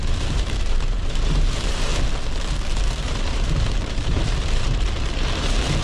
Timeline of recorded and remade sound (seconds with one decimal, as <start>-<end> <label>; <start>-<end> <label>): 0.0-1.9 remade; 1.9-3.0 recorded; 3.0-5.8 remade